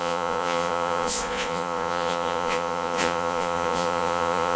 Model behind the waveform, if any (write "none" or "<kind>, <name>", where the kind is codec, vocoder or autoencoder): vocoder, Vocos